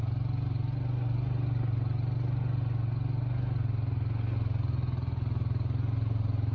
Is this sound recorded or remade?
recorded